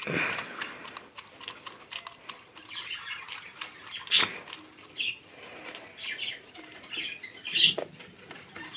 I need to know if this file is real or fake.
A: real